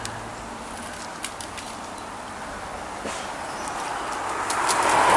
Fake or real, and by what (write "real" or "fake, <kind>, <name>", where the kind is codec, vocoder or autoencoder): real